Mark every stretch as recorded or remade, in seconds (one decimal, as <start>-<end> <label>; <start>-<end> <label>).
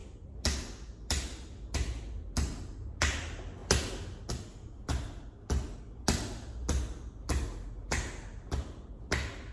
0.0-9.5 recorded